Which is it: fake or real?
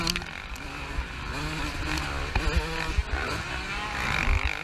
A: real